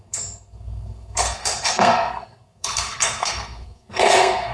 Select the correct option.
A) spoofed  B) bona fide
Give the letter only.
A